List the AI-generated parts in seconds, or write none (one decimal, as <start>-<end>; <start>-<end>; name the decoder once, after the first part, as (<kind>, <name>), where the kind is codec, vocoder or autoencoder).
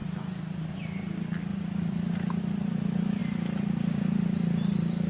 1.5-2.4 (vocoder, BigVGAN v2); 3.2-5.1